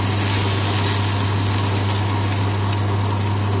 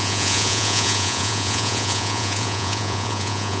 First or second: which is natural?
first